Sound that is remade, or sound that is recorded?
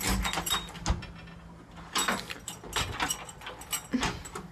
recorded